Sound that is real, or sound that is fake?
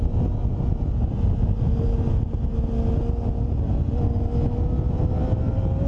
real